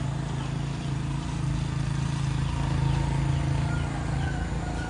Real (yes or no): yes